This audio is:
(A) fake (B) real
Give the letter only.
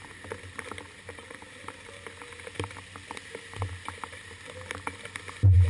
B